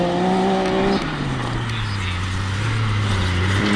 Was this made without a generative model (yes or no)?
yes